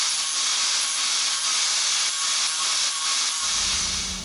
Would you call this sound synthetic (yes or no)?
no